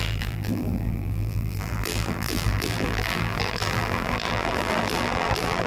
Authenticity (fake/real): fake